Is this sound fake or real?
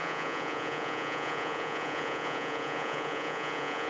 fake